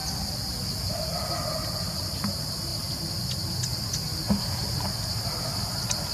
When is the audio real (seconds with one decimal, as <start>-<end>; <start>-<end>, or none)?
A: 1.3-6.1